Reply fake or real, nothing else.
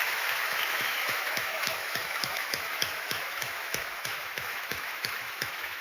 fake